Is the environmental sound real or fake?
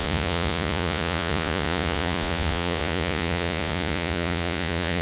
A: fake